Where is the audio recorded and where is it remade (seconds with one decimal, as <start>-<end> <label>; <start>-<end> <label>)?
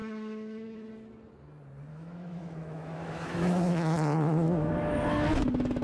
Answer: 0.0-0.9 remade; 0.9-1.9 recorded; 1.9-4.7 remade; 4.7-5.8 recorded